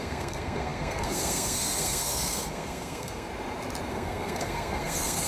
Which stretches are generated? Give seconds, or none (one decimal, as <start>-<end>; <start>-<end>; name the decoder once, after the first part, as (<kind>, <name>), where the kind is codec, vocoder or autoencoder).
0.0-3.3 (codec, SNAC); 3.9-5.3